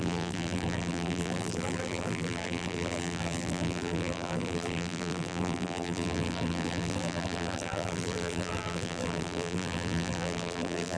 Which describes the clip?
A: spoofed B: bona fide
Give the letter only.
A